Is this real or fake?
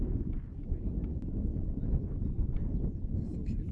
real